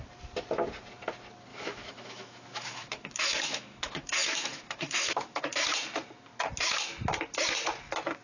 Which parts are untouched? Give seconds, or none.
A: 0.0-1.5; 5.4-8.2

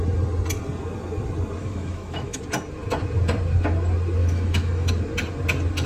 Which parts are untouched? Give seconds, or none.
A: 0.0-1.6; 2.4-4.2; 4.9-5.9

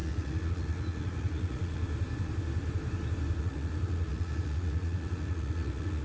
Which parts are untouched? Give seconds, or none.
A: 1.8-3.4

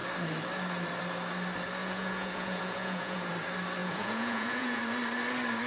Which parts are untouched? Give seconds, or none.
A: 0.0-1.8; 3.3-3.8; 4.8-5.7

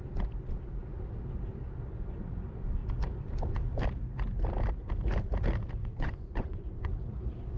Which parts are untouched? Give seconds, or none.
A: 0.0-5.8; 6.9-7.6